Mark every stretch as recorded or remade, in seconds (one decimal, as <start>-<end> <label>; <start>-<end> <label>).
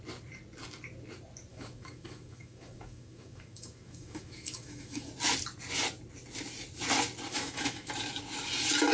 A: 0.0-1.5 recorded; 1.5-5.1 remade; 5.1-7.3 recorded; 7.3-7.9 remade; 7.9-8.9 recorded